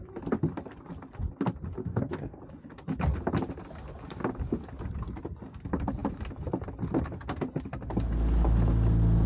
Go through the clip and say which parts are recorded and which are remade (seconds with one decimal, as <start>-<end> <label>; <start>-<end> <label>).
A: 0.0-1.8 recorded; 1.8-2.4 remade; 2.4-9.3 recorded